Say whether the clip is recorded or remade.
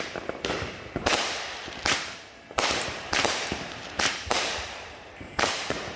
remade